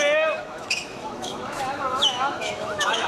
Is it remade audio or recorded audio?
remade